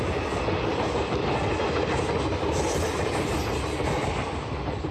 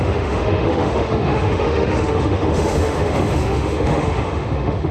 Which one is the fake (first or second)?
second